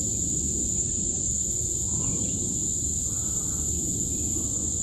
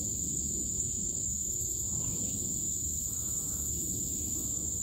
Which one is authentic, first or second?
first